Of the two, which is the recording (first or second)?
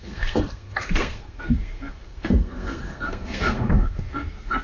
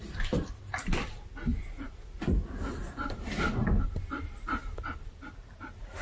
second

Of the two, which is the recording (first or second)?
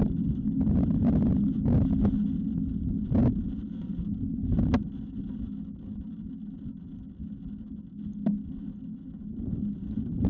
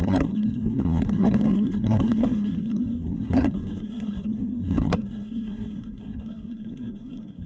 first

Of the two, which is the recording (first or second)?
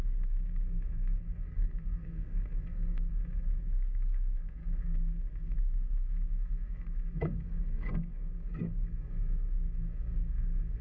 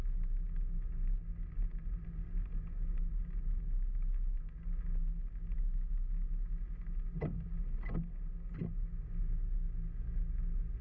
second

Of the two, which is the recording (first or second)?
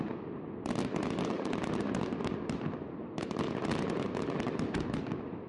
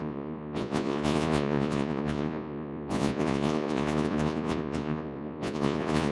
first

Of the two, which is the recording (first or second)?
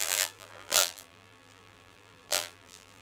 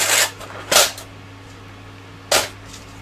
second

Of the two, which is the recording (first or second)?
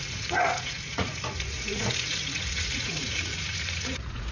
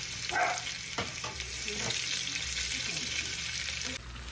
second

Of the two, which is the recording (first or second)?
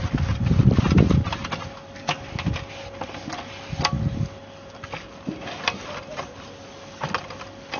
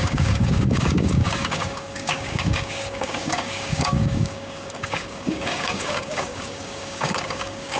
first